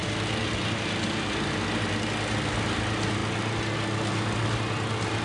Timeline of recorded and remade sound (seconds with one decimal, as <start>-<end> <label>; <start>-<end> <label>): 0.0-5.2 recorded